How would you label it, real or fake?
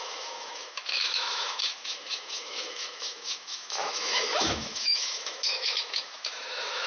fake